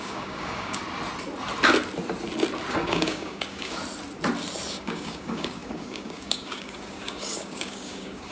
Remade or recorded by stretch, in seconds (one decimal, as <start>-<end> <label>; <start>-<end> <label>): 0.0-0.8 remade; 0.8-2.7 recorded; 2.7-3.8 remade; 3.8-4.7 recorded; 4.7-8.3 remade